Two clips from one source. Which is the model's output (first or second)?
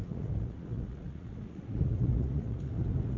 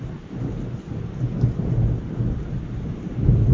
first